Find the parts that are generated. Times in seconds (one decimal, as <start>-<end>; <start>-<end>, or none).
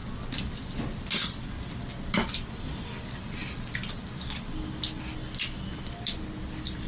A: none